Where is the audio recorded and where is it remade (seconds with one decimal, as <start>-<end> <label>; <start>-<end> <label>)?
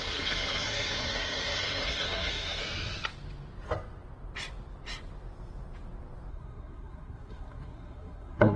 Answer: 0.0-2.6 remade; 2.6-6.3 recorded; 6.3-8.6 remade